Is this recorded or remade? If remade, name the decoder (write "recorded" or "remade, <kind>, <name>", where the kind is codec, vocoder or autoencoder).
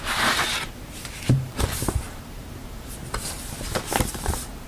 remade, vocoder, BigVGAN v2